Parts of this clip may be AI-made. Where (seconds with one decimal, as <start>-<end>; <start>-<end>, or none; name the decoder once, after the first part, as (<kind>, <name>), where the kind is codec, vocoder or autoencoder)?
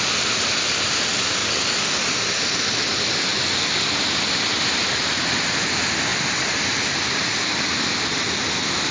1.4-2.1 (codec, DAC)